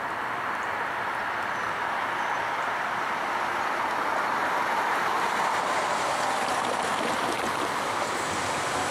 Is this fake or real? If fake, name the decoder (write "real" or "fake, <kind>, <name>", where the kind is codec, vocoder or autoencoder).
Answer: fake, vocoder, BigVGAN v2